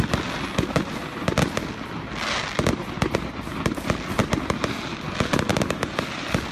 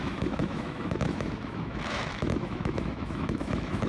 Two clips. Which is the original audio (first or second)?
first